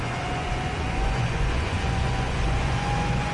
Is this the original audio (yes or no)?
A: no